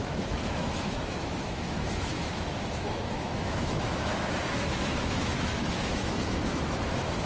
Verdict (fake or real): fake